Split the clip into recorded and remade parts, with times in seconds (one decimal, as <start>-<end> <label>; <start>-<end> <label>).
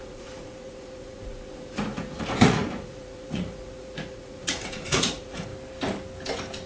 0.0-5.5 remade; 5.5-6.7 recorded